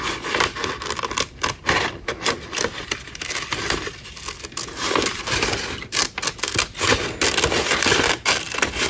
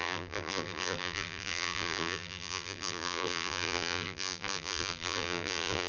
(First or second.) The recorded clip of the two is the first